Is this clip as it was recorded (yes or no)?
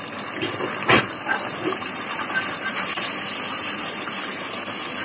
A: no